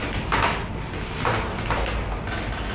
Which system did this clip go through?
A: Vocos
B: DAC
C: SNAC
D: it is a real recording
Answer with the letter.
D